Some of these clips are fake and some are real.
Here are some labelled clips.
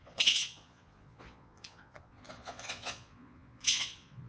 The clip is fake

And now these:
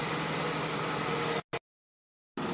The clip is real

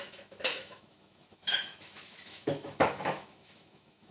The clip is fake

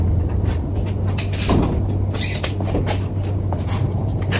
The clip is real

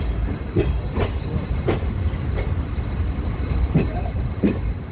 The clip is real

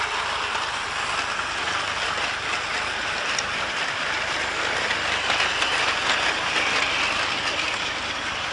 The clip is real